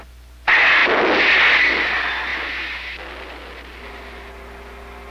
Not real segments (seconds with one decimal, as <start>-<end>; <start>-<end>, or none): none

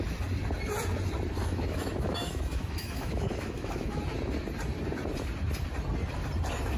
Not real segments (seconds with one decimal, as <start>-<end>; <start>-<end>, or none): 1.4-4.0

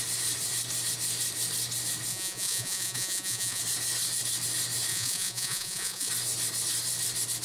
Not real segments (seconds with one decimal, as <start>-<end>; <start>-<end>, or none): 2.1-3.6; 4.9-6.1